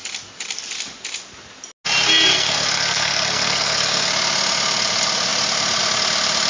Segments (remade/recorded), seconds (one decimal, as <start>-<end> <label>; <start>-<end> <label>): 0.0-2.3 recorded; 2.3-4.1 remade; 4.1-6.5 recorded